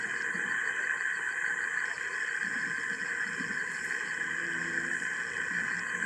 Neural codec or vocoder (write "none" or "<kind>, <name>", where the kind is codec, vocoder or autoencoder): none